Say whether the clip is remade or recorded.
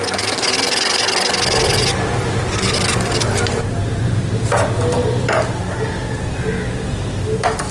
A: recorded